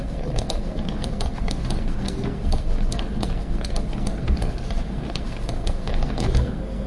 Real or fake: fake